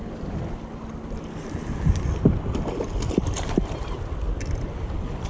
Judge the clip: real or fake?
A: real